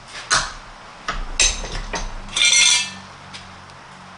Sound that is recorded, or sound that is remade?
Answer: recorded